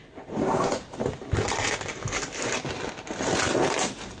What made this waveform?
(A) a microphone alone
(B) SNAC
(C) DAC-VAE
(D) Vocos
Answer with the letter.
A